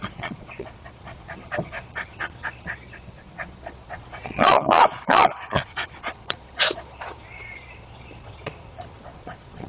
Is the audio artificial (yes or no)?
yes